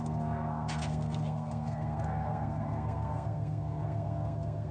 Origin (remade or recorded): remade